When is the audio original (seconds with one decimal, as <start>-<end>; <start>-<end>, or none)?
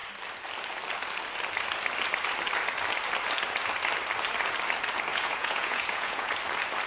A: 0.0-5.1; 6.3-6.9